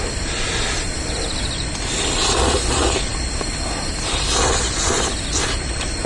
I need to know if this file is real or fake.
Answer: real